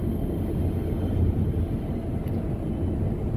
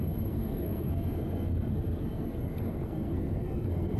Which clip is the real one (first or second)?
first